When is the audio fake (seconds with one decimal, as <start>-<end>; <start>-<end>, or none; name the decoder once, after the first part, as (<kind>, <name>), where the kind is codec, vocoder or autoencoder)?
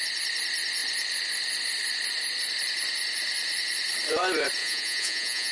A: 4.6-5.5 (vocoder, Vocos)